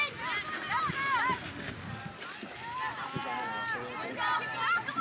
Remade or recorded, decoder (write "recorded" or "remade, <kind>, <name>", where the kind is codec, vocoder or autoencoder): recorded